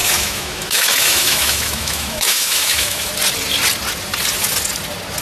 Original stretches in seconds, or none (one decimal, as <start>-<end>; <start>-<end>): 3.1-5.2